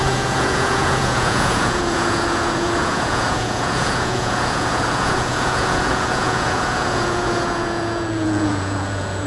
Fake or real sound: fake